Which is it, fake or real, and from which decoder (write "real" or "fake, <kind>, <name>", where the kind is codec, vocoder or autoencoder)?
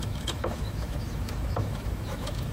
fake, autoencoder, DAC-VAE